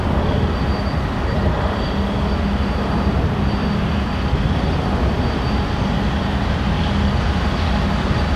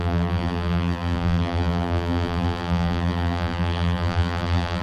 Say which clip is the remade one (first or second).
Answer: second